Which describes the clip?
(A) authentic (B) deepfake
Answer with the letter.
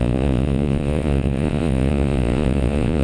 B